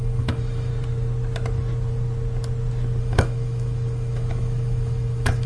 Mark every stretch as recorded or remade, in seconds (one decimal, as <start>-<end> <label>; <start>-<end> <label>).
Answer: 0.0-0.7 remade; 0.7-3.0 recorded; 3.0-5.5 remade